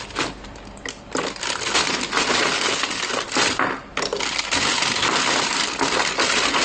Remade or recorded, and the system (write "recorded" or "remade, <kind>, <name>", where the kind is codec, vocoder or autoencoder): recorded